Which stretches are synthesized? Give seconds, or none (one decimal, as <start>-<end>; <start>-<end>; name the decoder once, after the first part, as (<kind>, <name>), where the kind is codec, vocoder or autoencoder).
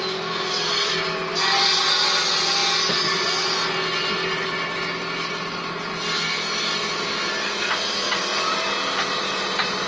none